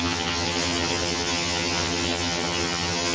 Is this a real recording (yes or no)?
no